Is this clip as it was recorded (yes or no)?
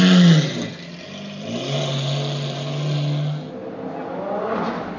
yes